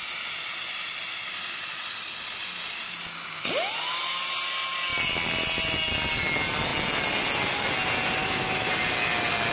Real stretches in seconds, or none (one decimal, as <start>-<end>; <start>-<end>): 0.0-8.2; 8.7-9.5